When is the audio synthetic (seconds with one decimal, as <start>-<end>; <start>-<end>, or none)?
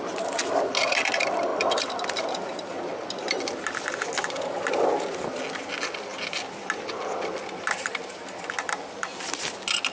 none